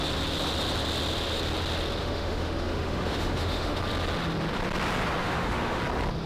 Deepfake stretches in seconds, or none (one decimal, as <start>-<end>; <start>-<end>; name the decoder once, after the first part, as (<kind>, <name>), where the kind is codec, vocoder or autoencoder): 2.0-3.8 (autoencoder, DAC-VAE); 5.2-5.8